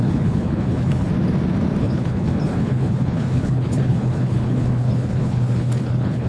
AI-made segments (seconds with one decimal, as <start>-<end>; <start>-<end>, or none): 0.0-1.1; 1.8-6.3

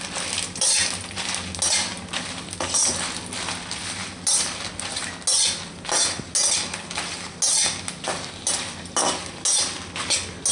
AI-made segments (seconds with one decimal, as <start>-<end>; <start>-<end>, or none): none

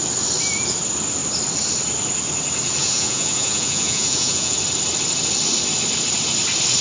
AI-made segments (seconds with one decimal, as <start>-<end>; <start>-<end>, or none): 2.8-4.6

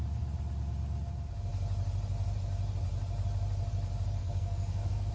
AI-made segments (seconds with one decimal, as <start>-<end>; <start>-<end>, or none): 4.2-5.1

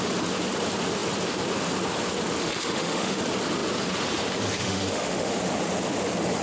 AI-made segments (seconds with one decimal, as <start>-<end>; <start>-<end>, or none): 2.4-3.2; 4.6-5.4